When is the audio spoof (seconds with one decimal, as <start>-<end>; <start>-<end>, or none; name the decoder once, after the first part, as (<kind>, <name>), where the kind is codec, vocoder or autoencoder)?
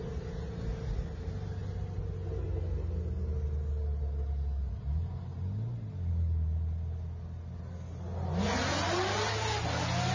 none